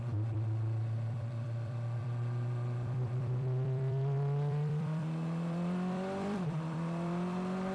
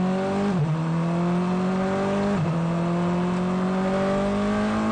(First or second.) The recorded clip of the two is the second